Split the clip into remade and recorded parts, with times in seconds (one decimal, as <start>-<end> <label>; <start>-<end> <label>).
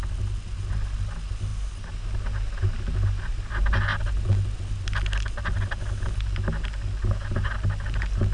0.0-8.3 recorded